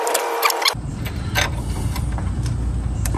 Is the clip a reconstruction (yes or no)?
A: yes